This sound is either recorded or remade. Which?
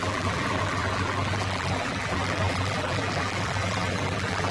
remade